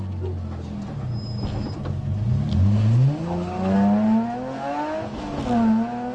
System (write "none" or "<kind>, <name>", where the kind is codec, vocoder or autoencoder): none